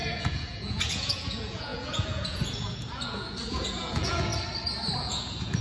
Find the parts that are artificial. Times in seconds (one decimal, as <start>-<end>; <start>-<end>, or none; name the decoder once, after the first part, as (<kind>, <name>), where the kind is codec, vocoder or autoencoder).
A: 0.0-4.3 (vocoder, Vocos); 5.0-5.6